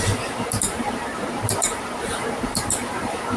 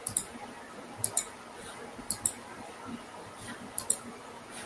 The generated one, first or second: first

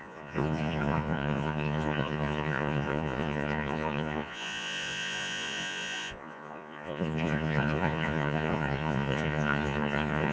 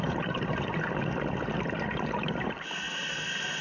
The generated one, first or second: first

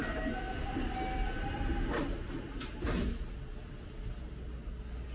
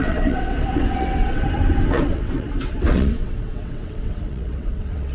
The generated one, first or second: second